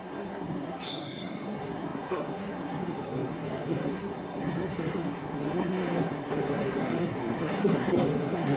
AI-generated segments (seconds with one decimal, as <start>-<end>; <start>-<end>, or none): 0.0-8.6